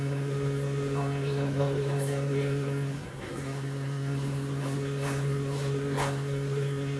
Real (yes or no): no